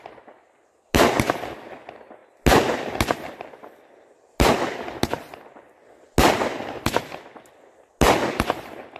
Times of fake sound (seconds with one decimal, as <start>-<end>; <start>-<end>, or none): none